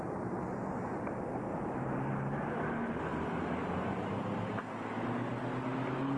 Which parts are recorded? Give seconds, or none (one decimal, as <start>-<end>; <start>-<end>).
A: 0.0-6.2